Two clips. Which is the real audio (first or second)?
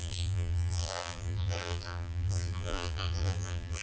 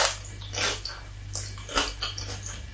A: second